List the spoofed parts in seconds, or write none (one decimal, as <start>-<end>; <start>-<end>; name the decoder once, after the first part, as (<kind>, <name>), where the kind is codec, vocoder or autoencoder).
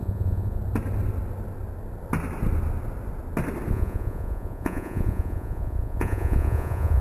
0.0-0.6 (vocoder, Vocos); 3.7-7.0